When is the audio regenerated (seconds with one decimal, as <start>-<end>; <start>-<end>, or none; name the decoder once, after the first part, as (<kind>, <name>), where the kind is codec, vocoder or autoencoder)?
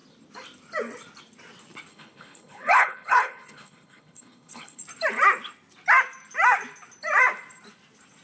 1.9-4.8 (codec, HILCodec)